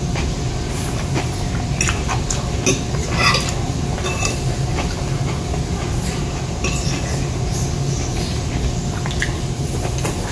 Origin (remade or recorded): recorded